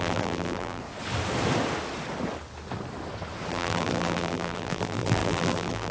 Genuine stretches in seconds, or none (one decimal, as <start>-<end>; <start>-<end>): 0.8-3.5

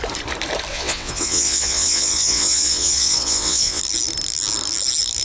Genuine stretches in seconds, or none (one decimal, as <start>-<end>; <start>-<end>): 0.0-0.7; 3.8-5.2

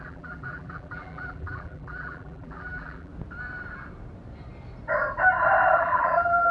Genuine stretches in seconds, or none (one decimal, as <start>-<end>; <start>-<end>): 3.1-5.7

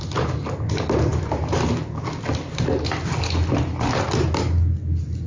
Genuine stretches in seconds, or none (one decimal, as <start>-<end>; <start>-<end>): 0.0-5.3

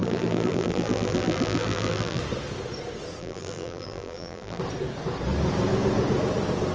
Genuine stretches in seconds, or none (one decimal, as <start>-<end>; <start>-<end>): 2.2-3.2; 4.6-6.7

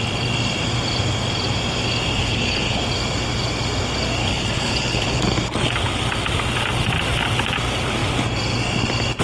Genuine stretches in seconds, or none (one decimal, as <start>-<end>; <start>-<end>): 0.0-2.2; 2.8-4.2; 5.2-9.2

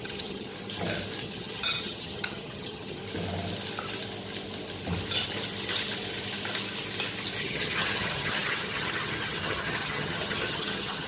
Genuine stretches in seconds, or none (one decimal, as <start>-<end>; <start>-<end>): 0.5-1.2; 3.0-7.4

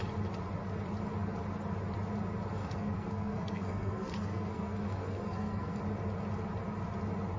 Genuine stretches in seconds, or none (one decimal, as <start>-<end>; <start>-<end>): 0.0-2.6; 5.8-7.4